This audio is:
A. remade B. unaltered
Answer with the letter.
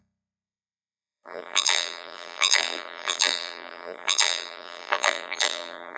A